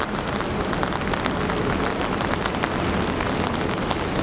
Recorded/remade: recorded